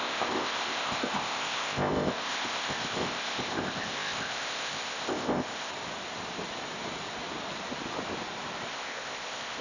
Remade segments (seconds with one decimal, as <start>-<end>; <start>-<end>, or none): 0.0-5.7; 8.7-9.6